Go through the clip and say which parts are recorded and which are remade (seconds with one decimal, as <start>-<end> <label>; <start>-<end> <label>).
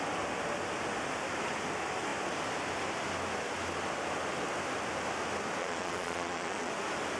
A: 0.0-5.6 recorded; 5.6-6.7 remade; 6.7-7.2 recorded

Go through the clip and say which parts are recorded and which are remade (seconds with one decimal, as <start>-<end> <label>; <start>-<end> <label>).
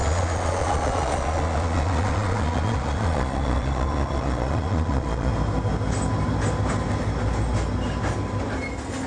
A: 0.0-5.3 remade; 5.3-9.1 recorded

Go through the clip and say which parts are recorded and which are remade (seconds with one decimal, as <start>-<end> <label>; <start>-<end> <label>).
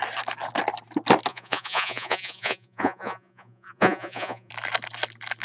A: 0.0-1.3 recorded; 1.3-4.5 remade; 4.5-5.4 recorded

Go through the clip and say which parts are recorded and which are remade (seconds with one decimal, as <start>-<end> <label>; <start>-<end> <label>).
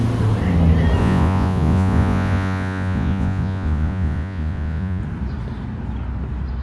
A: 0.0-1.0 recorded; 1.0-5.0 remade; 5.0-6.6 recorded